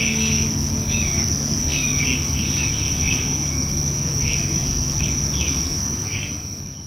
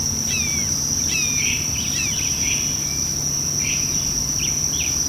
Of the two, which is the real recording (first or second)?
second